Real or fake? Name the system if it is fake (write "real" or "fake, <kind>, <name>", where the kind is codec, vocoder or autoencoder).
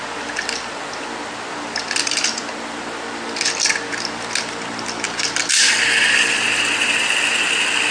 real